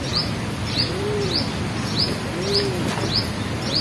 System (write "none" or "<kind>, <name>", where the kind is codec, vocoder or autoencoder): none